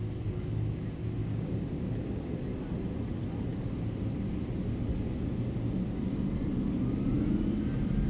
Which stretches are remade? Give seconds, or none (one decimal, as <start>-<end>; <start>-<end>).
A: 1.2-1.9